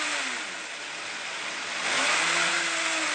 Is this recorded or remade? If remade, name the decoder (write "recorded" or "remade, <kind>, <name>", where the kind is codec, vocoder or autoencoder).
recorded